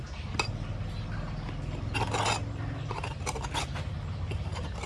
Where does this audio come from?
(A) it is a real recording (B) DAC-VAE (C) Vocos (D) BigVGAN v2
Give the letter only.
A